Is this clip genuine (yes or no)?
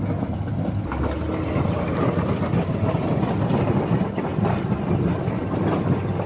yes